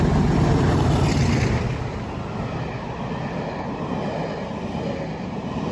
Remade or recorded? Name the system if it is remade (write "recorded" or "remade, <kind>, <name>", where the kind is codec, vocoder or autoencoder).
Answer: recorded